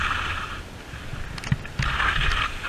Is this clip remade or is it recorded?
recorded